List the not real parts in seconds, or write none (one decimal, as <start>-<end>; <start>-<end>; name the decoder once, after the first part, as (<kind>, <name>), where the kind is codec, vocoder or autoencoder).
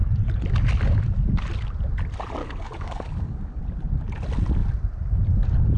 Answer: 2.4-3.6 (codec, DAC)